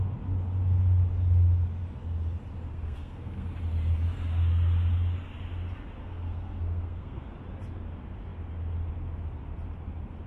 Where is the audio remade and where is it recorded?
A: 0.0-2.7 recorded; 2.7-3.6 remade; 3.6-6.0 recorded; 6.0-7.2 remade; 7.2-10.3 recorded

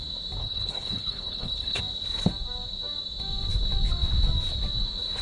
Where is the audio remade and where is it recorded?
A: 0.0-0.4 recorded; 0.4-1.8 remade; 1.8-5.2 recorded